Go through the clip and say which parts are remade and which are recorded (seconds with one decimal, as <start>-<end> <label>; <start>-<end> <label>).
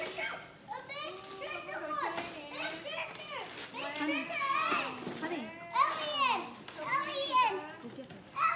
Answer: 0.0-8.6 recorded